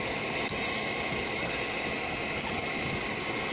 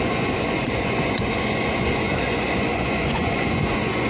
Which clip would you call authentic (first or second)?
first